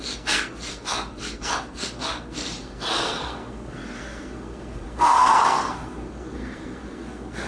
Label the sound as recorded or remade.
remade